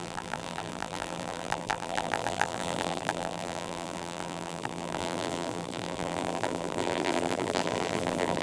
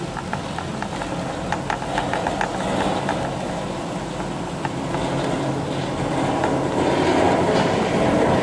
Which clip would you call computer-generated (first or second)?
first